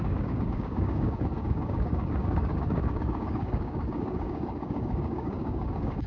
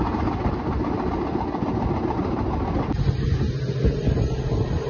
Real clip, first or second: second